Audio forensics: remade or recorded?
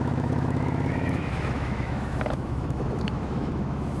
remade